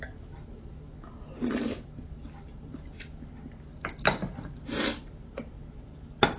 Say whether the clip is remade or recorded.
recorded